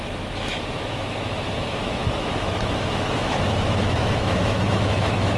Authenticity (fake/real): fake